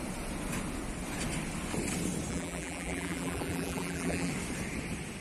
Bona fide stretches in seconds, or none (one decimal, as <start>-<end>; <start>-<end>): 0.0-2.3; 4.3-5.2